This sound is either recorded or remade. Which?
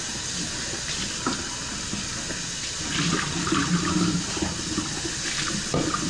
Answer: recorded